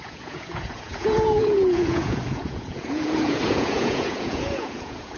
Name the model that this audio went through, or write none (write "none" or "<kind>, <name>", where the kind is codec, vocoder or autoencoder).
vocoder, Vocos